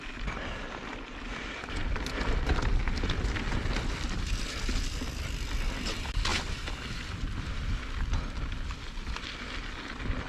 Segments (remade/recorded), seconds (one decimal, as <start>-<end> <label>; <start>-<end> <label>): 0.0-6.3 recorded; 6.3-7.5 remade; 7.5-10.3 recorded